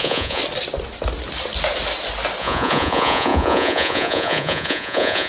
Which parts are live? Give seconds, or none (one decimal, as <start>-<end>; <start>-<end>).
0.4-2.4